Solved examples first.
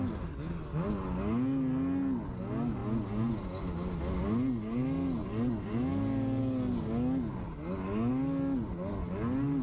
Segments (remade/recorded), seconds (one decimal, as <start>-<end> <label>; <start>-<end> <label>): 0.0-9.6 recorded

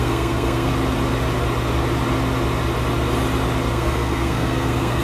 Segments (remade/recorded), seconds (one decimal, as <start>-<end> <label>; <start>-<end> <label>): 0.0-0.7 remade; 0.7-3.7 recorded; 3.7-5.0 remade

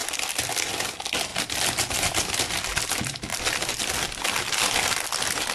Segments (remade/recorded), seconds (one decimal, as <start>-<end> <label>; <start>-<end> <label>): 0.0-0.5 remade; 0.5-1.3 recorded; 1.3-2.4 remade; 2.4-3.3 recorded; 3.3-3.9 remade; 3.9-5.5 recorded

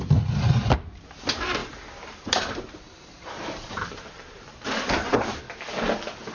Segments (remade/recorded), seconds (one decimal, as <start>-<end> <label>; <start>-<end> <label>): 0.0-1.6 recorded; 1.6-5.4 remade; 5.4-6.3 recorded